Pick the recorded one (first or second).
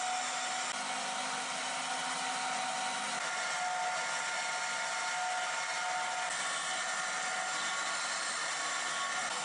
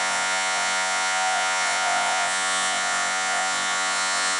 first